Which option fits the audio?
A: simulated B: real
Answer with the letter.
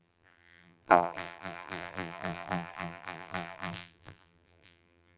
A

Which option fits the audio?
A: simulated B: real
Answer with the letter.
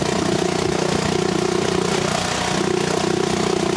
B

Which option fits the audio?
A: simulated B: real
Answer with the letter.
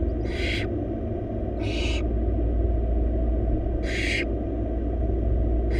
B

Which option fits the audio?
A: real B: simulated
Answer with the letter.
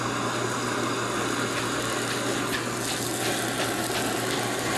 A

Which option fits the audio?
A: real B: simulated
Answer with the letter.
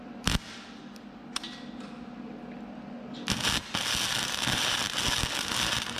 A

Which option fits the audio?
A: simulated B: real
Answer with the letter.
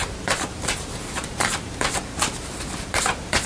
A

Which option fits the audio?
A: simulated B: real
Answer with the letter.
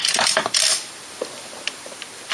A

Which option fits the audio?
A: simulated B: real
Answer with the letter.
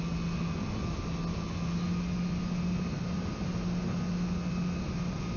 B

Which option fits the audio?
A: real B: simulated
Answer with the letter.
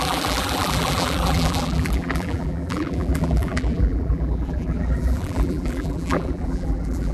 B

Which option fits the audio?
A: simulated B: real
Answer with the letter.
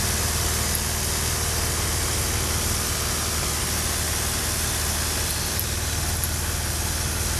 B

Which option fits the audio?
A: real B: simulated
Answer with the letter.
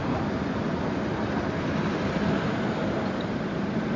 A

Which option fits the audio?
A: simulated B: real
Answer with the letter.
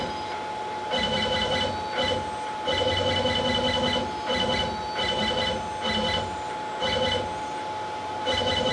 B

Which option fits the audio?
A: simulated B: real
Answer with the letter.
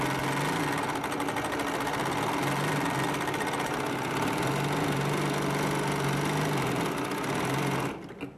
B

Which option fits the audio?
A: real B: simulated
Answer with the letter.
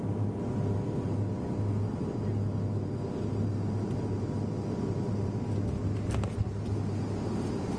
A